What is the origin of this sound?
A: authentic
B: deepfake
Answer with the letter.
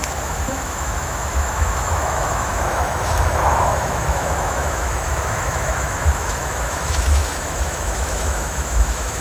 B